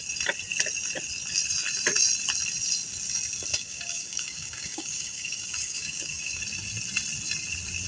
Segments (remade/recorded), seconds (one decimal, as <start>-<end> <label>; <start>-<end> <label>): 0.0-3.5 recorded; 3.5-6.4 remade; 6.4-7.9 recorded